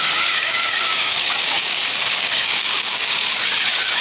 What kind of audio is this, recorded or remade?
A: remade